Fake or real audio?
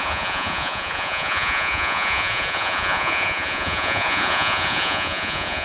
fake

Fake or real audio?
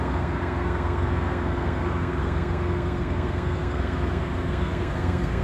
fake